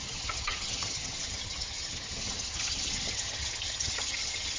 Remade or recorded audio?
remade